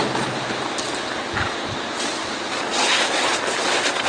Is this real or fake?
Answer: real